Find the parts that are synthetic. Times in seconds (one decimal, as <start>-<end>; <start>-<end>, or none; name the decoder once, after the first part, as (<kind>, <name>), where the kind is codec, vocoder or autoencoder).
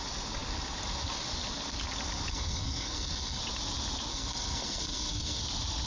2.3-3.4 (codec, SNAC); 4.1-5.4